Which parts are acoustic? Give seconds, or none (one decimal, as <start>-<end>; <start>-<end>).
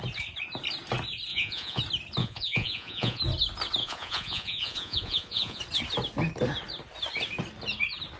0.0-1.3; 1.8-2.2; 3.2-3.8; 5.6-8.2